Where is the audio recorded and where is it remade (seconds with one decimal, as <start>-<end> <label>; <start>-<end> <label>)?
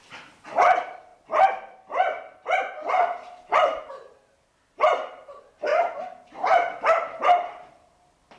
0.0-5.7 remade; 5.7-6.4 recorded; 6.4-8.4 remade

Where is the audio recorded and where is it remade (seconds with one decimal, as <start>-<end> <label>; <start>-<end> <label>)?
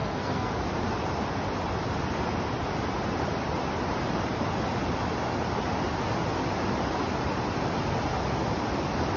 0.0-0.5 remade; 0.5-9.2 recorded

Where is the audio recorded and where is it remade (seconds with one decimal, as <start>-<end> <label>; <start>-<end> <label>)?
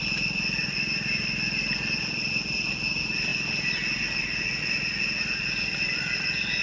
0.0-6.6 recorded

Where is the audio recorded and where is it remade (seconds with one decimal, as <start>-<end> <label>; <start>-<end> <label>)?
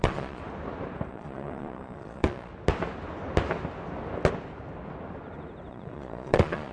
0.0-0.4 remade; 0.4-1.1 recorded; 1.1-2.5 remade; 2.5-5.7 recorded; 5.7-6.7 remade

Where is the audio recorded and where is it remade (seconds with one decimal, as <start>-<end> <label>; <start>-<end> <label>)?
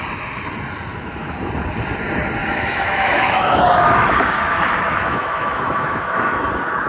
0.0-0.9 recorded; 0.9-1.5 remade; 1.5-2.4 recorded; 2.4-6.5 remade; 6.5-6.9 recorded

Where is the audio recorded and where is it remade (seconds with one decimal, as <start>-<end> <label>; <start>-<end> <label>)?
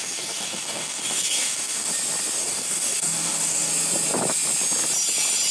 0.0-1.9 remade; 1.9-2.4 recorded; 2.4-3.7 remade; 3.7-5.5 recorded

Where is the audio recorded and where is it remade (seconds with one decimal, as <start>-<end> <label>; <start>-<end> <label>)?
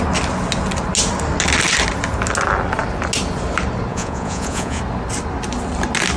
0.0-3.9 recorded; 3.9-4.8 remade; 4.8-6.2 recorded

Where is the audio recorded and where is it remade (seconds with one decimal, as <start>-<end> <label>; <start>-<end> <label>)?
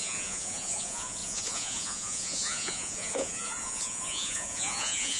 0.0-5.2 remade